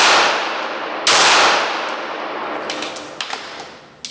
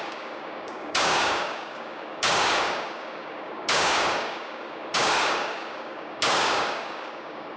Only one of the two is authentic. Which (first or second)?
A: first